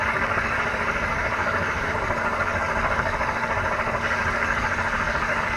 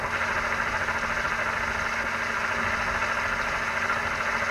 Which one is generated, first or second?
first